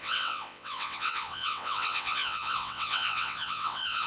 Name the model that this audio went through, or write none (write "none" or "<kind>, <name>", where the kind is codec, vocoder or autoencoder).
vocoder, WaveNeXt